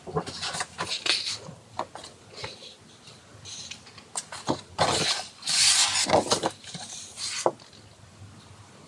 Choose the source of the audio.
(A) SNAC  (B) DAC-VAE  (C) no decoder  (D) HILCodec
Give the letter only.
C